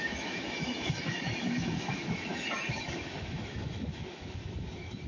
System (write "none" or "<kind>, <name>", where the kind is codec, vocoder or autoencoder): autoencoder, DAC-VAE